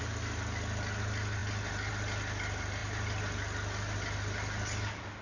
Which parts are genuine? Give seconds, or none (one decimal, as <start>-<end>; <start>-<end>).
0.0-5.2